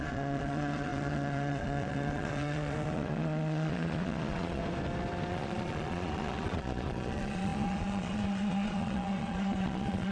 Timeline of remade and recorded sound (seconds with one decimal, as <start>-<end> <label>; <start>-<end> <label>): 0.0-4.6 remade; 4.6-5.3 recorded; 5.3-10.1 remade